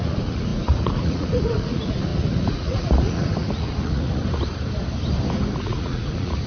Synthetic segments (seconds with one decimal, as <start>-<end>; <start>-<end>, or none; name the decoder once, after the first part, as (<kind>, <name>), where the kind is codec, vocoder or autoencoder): 0.0-4.2 (vocoder, Vocos); 5.6-6.5